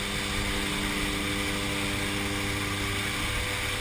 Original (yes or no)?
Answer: yes